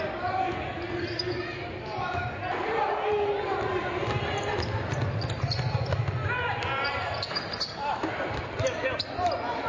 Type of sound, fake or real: real